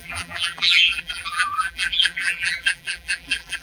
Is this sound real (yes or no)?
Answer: no